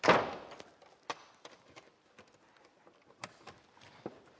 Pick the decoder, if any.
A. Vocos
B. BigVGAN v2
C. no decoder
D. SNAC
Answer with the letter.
C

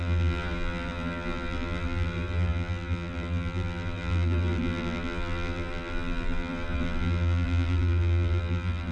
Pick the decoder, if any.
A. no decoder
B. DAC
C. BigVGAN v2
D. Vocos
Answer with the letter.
C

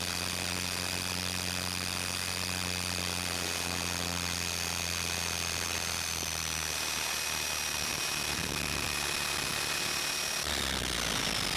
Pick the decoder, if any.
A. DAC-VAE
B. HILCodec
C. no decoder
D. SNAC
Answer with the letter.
C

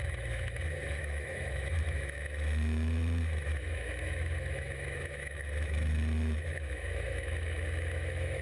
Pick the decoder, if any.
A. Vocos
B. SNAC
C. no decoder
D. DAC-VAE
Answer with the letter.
D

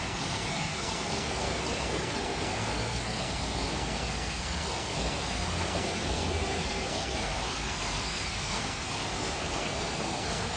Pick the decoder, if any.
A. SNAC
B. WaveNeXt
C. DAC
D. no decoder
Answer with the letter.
A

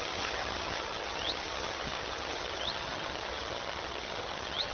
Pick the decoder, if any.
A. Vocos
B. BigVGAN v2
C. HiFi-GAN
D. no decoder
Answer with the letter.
C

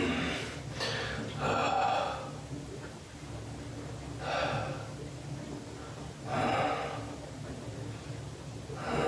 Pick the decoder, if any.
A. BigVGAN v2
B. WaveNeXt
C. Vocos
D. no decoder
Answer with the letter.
D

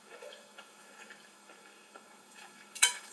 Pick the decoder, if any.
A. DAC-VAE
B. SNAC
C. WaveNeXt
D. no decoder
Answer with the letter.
A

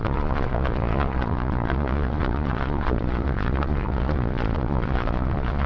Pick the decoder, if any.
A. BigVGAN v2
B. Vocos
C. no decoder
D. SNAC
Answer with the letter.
B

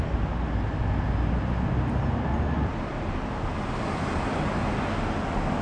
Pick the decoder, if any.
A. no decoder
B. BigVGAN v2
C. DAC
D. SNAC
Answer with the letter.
A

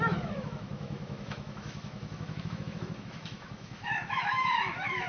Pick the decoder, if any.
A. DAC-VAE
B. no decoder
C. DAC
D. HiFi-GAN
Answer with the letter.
A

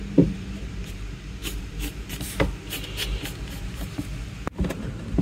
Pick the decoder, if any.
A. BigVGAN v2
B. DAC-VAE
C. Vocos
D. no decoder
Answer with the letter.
A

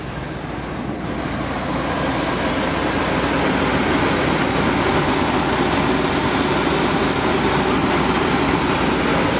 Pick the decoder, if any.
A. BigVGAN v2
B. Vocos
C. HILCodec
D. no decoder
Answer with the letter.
D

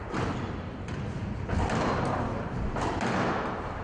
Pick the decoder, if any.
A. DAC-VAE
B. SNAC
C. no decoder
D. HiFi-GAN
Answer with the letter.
C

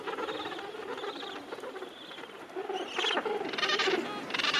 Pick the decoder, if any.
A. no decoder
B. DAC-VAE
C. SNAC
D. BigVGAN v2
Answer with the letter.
A